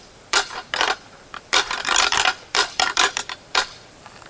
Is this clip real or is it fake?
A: fake